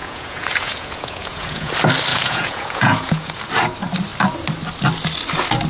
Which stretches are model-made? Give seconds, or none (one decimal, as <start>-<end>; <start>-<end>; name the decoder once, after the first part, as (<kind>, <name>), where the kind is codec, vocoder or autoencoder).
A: 0.0-1.7 (vocoder, Vocos); 2.1-3.4